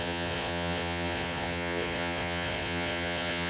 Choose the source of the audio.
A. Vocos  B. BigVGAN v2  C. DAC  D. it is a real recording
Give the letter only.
A